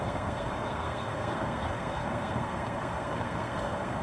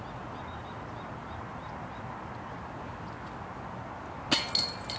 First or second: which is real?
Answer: second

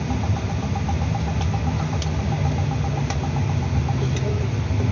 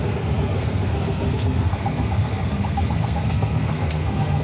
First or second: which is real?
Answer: first